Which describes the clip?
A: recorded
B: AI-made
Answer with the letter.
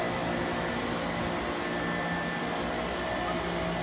A